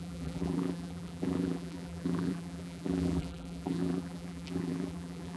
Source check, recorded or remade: remade